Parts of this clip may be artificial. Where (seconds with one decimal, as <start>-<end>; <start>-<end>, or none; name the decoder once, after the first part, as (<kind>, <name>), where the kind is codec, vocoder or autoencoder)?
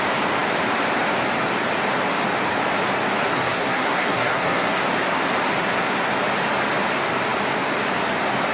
3.2-4.8 (codec, SNAC); 5.6-6.1